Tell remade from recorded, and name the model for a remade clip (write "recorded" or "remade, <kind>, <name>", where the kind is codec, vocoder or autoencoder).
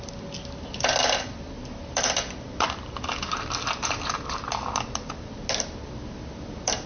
recorded